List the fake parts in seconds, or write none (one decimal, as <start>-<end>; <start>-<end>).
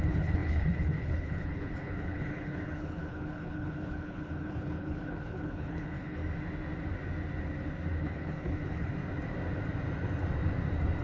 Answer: 0.0-6.2; 8.0-8.9